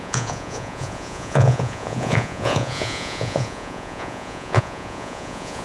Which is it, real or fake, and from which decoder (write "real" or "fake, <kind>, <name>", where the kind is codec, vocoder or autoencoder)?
fake, vocoder, Vocos